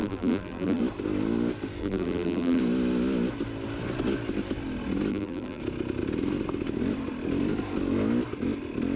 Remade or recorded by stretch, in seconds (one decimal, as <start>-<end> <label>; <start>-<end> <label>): 0.0-0.8 remade; 0.8-1.8 recorded; 1.8-2.6 remade; 2.6-5.1 recorded; 5.1-5.6 remade; 5.6-9.0 recorded

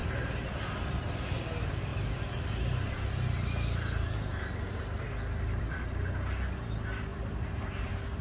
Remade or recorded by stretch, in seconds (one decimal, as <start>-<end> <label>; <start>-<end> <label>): 0.0-8.2 recorded

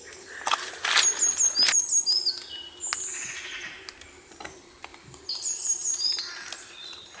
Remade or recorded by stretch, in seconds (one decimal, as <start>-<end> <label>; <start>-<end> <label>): 0.0-4.9 recorded; 4.9-6.2 remade; 6.2-7.2 recorded

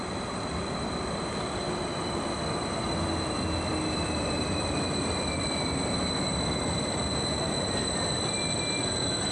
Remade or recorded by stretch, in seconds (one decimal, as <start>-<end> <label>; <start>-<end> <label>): 0.0-6.3 recorded; 6.3-7.0 remade; 7.0-9.3 recorded

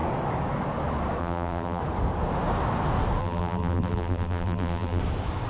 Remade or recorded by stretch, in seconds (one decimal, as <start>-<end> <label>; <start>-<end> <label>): 0.0-1.2 recorded; 1.2-1.8 remade; 1.8-3.2 recorded; 3.2-5.0 remade; 5.0-5.5 recorded

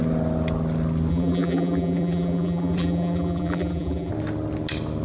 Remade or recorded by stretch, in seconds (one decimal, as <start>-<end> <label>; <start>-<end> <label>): 0.0-1.1 recorded; 1.1-4.1 remade; 4.1-5.0 recorded

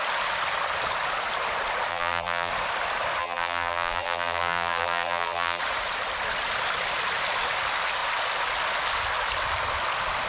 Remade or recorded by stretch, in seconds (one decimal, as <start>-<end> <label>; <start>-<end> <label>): 0.0-1.9 recorded; 1.9-2.5 remade; 2.5-3.2 recorded; 3.2-5.6 remade; 5.6-10.3 recorded